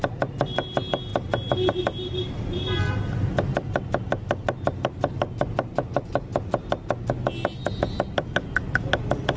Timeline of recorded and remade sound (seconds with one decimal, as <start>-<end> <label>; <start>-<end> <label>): 0.0-9.4 recorded